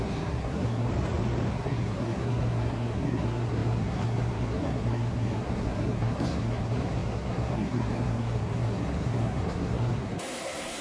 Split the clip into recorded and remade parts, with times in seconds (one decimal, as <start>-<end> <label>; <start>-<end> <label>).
0.0-0.9 remade; 0.9-1.5 recorded; 1.5-10.8 remade